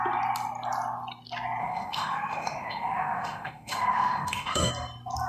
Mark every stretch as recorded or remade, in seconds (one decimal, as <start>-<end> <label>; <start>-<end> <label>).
0.0-1.6 recorded; 1.6-4.7 remade; 4.7-5.3 recorded